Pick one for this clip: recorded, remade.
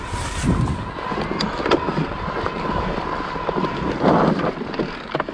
recorded